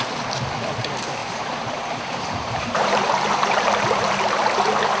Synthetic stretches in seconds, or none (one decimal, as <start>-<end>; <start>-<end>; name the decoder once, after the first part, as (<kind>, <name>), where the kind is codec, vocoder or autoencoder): 1.2-4.2 (vocoder, BigVGAN v2)